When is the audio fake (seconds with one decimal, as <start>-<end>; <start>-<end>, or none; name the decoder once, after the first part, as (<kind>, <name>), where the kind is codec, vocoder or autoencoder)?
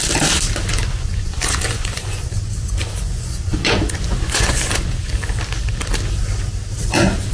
0.7-5.1 (vocoder, Vocos)